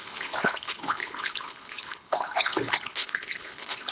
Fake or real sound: fake